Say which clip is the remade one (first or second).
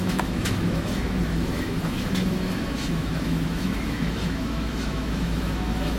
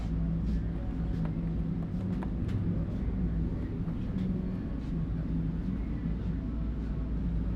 first